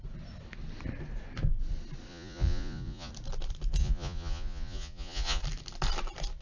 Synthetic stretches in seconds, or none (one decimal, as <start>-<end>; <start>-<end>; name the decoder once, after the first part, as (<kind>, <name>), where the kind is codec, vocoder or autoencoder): 2.1-3.1 (vocoder, Vocos); 3.8-5.4